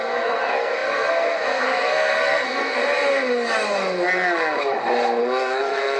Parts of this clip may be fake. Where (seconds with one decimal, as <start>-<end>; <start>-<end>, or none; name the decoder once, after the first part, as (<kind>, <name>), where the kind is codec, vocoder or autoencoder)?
0.0-2.8 (codec, SNAC); 5.2-6.0